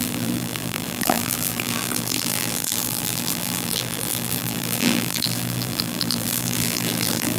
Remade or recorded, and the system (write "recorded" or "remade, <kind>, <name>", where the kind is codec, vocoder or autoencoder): remade, vocoder, BigVGAN v2